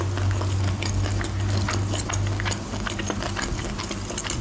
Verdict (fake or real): real